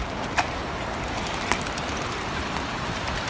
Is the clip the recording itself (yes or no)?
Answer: yes